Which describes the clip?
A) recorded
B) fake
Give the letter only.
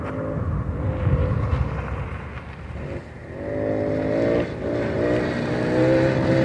A